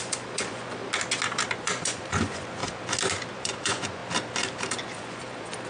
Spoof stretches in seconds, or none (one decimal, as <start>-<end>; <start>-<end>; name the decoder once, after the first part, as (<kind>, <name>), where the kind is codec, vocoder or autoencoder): 0.0-0.8 (vocoder, Vocos); 1.6-2.6; 3.3-4.0; 4.8-5.7